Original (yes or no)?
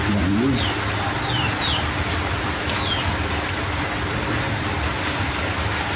yes